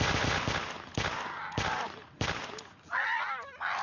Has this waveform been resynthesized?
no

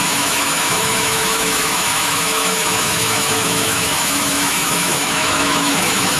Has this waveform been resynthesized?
yes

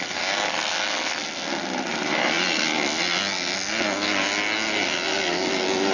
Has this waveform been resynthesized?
no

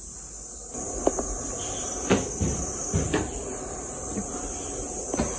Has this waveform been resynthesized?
no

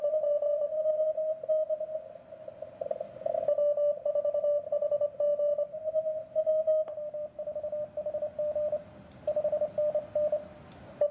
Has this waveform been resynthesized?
no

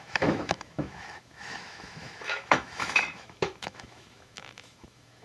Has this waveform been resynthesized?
yes